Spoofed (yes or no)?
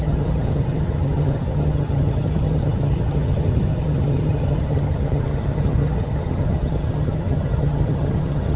yes